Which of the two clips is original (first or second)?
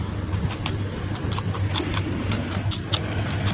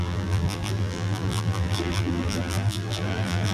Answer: first